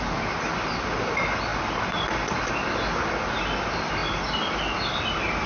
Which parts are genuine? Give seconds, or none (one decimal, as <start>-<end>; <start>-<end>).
0.0-5.5